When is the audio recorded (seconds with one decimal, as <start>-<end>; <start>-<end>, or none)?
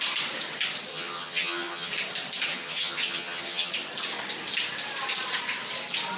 0.0-0.9; 1.9-2.5; 3.7-6.2